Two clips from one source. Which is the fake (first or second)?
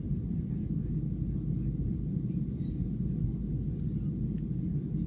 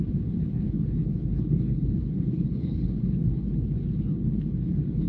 second